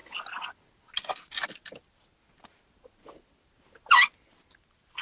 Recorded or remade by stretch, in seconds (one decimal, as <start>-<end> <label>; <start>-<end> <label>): 0.0-5.0 recorded